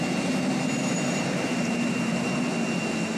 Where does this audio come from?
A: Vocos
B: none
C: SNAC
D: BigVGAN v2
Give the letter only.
D